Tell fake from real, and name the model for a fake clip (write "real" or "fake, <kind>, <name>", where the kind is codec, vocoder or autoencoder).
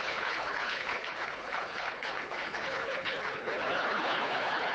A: fake, codec, HILCodec